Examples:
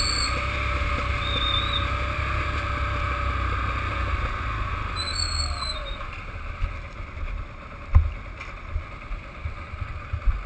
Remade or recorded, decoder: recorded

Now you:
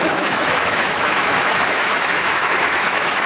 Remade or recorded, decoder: remade, autoencoder, DAC-VAE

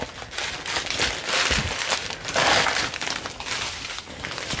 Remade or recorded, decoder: recorded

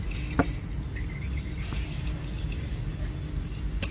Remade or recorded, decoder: recorded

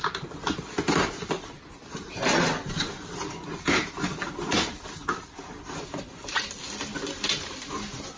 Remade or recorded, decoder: recorded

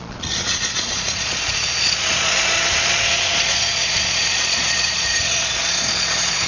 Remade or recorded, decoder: remade, vocoder, Vocos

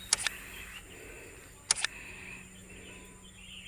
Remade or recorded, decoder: recorded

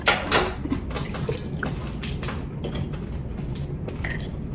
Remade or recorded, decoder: remade, vocoder, BigVGAN v2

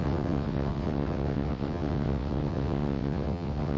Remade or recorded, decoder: remade, vocoder, WaveNeXt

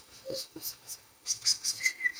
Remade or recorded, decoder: remade, autoencoder, DAC-VAE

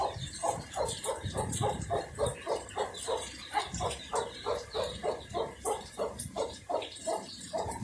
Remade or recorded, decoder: remade, vocoder, BigVGAN v2